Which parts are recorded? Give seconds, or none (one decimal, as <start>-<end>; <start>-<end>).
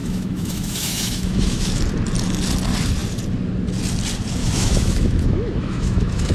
1.8-4.4